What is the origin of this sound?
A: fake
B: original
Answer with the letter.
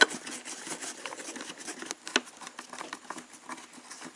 B